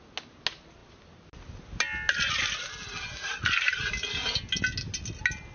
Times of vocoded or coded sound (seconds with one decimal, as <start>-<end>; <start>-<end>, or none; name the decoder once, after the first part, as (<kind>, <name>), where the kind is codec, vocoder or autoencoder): none